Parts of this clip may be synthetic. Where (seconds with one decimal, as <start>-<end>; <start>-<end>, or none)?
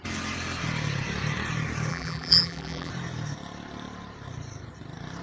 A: 1.9-2.9